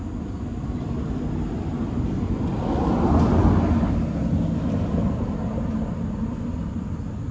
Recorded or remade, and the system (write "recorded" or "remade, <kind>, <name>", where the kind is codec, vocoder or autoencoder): recorded